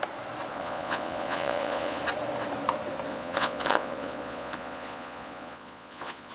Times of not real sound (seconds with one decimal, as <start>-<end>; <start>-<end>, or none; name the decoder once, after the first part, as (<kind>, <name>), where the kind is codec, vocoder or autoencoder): 0.5-2.0 (vocoder, Vocos); 3.1-6.3